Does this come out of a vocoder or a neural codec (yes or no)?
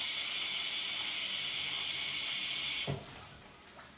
no